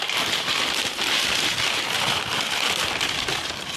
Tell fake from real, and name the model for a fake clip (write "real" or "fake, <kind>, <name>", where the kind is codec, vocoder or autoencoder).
real